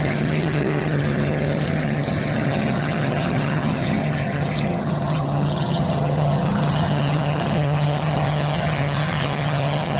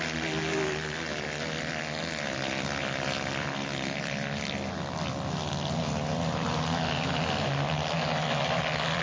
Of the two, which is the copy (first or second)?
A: first